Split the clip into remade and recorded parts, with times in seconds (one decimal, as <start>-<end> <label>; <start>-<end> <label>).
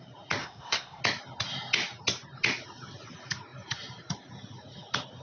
0.0-0.4 recorded; 0.4-1.0 remade; 1.0-5.2 recorded